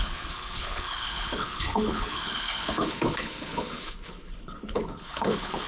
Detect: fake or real fake